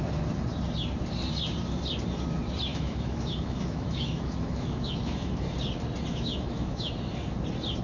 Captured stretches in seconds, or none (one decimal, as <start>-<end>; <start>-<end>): 0.0-2.7; 5.4-6.1; 6.9-7.8